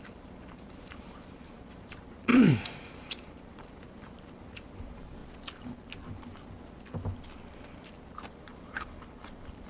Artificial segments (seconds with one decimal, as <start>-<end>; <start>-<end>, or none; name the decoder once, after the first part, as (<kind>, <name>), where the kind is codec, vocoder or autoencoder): 0.0-5.2 (vocoder, BigVGAN v2); 7.6-9.7